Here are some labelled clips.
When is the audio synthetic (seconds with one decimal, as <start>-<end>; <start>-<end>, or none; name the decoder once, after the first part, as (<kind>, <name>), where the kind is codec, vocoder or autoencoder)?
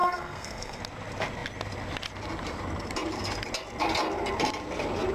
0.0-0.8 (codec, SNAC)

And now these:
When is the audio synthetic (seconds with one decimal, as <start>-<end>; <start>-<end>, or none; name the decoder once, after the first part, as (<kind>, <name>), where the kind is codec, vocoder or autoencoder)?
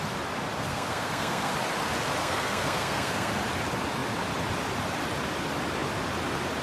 0.7-1.5 (codec, SNAC); 2.2-3.3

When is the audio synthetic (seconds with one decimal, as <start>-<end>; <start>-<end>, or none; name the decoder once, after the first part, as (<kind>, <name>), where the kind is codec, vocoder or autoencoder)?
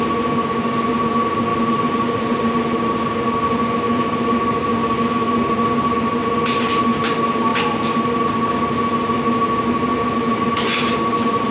1.5-2.9 (vocoder, BigVGAN v2); 7.5-8.3; 9.9-11.5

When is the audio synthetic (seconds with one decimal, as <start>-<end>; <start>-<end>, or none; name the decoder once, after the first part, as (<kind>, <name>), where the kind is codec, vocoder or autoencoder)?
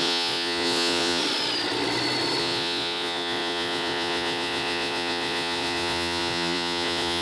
0.0-1.2 (vocoder, Vocos); 2.4-7.2